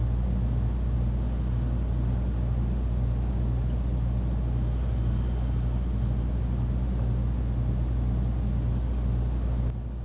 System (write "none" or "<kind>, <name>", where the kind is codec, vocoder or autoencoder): none